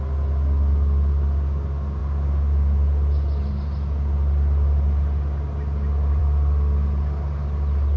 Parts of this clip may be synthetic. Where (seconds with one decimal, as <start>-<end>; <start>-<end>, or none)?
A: none